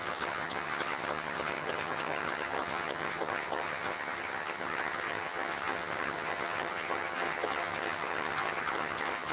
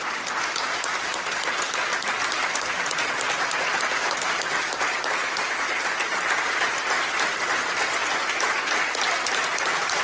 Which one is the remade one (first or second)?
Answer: first